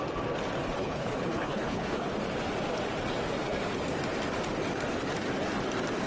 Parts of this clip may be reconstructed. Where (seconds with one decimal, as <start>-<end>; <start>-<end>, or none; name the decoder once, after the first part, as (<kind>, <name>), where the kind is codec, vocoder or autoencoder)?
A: 0.8-2.1 (codec, HILCodec)